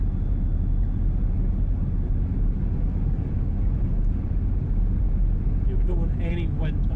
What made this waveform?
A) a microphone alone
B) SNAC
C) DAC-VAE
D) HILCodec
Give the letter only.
A